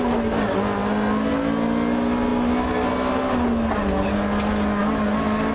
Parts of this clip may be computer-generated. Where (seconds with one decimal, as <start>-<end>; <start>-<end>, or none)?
none